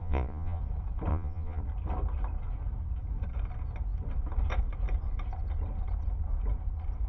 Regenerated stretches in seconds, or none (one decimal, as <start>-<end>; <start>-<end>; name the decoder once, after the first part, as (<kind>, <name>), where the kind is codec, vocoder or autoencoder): 0.0-0.6 (vocoder, Vocos); 1.1-1.6